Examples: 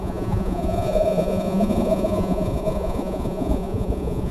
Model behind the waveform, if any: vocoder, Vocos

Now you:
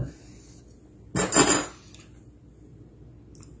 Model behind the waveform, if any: none